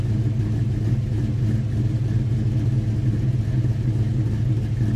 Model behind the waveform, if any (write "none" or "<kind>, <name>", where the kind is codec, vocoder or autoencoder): none